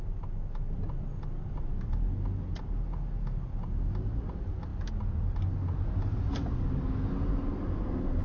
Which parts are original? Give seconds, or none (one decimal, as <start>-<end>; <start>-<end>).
0.0-8.2